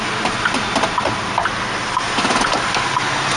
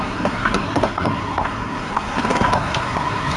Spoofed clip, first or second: second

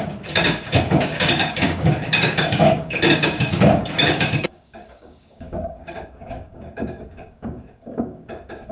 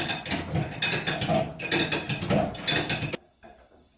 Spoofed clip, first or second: first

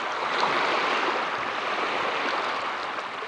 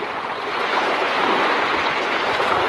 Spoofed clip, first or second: second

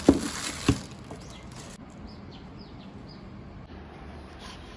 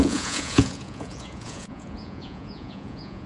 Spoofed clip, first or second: second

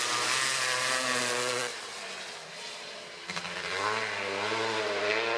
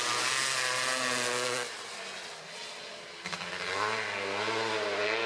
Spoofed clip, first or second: first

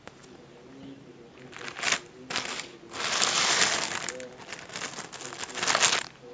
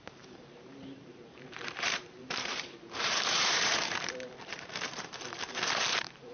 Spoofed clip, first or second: second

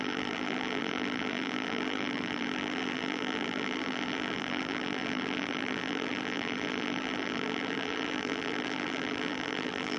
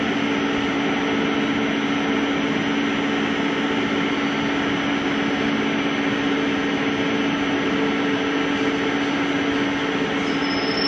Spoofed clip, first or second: first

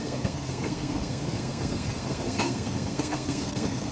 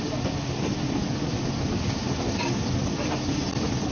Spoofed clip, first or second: first